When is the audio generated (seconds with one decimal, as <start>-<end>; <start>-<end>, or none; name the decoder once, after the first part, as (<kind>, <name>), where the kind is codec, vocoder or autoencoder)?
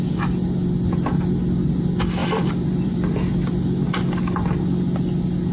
2.2-3.8 (vocoder, BigVGAN v2)